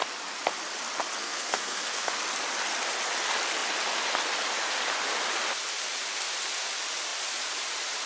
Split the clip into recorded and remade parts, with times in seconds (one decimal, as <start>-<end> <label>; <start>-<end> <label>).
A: 0.0-1.2 recorded; 1.2-2.2 remade; 2.2-8.1 recorded

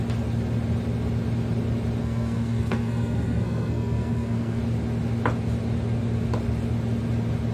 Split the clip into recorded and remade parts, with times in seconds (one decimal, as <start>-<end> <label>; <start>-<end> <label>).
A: 0.0-2.0 recorded; 2.0-4.6 remade; 4.6-7.5 recorded

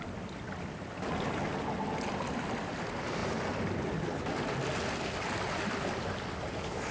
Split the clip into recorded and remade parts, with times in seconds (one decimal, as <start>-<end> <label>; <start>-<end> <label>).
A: 0.0-6.9 recorded

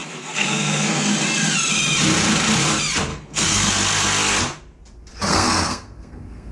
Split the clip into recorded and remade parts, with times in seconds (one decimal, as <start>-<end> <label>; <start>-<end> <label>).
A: 0.0-1.1 remade; 1.1-3.1 recorded; 3.1-3.7 remade; 3.7-5.3 recorded; 5.3-6.5 remade

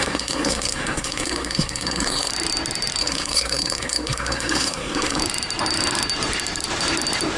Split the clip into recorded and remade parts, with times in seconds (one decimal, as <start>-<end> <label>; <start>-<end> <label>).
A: 0.0-2.3 remade; 2.3-3.0 recorded; 3.0-5.2 remade; 5.2-7.4 recorded

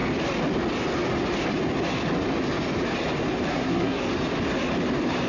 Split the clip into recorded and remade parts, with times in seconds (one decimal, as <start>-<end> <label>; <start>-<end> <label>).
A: 0.0-3.5 recorded; 3.5-4.0 remade; 4.0-5.3 recorded